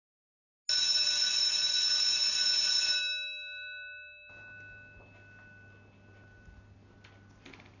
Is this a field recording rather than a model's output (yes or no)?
yes